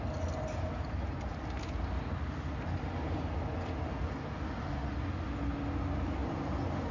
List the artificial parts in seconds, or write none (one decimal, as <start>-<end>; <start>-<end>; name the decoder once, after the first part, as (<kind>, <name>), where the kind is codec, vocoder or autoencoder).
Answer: none